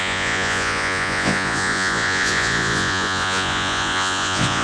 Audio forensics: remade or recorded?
remade